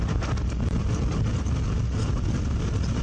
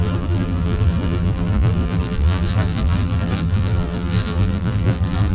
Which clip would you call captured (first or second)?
first